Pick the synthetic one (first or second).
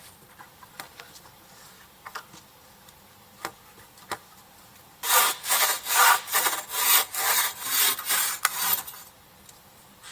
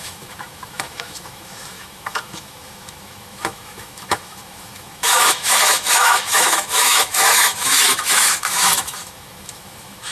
second